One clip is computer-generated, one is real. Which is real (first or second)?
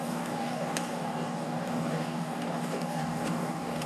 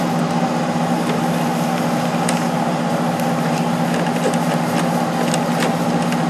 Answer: second